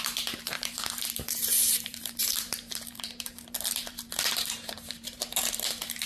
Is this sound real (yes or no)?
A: no